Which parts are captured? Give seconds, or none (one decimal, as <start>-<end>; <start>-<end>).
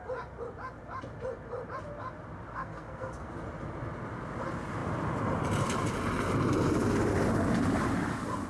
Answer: 0.0-2.5; 3.3-8.5